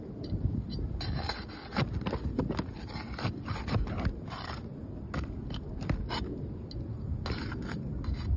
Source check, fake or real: real